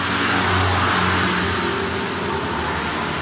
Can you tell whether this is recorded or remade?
recorded